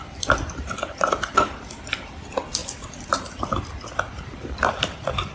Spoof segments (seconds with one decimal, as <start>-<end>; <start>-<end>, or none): 0.0-5.3